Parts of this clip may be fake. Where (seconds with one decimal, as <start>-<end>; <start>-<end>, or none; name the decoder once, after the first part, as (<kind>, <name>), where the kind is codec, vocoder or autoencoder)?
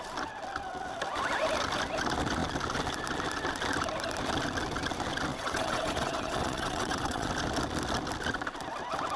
5.3-7.3 (vocoder, WaveNeXt)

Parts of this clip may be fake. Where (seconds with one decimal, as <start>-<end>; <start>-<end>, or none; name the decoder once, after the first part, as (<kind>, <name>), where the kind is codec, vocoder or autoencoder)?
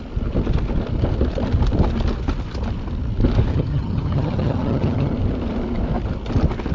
3.5-5.1 (vocoder, HiFi-GAN)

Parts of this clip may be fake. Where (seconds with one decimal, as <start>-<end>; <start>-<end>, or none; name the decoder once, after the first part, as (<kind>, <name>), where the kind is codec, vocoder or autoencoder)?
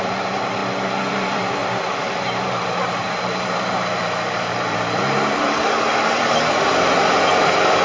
0.0-0.6 (vocoder, BigVGAN v2); 1.1-7.8